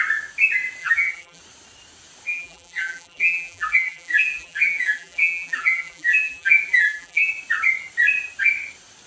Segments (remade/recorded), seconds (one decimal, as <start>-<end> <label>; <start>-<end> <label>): 0.0-0.8 recorded; 0.8-1.4 remade; 1.4-2.3 recorded; 2.3-7.3 remade; 7.3-9.1 recorded